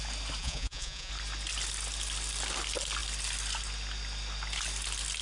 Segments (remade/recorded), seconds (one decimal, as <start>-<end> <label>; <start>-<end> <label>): 0.0-0.4 recorded; 0.4-1.1 remade; 1.1-5.2 recorded